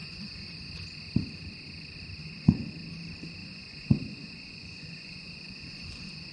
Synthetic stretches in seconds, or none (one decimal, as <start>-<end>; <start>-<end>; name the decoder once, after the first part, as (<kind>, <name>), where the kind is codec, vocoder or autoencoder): 0.0-0.7 (vocoder, Vocos); 2.2-2.7; 3.4-6.3